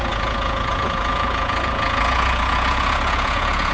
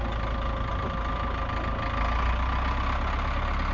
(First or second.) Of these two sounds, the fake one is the first